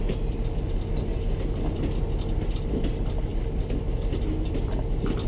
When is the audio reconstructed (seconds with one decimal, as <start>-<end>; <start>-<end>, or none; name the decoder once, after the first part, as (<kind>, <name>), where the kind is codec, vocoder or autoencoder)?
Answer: none